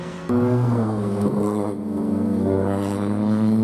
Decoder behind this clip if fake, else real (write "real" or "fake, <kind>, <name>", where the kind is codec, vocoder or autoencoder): fake, codec, SNAC